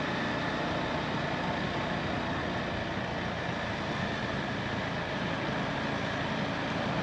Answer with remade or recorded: recorded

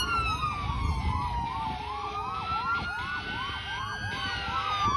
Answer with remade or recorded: recorded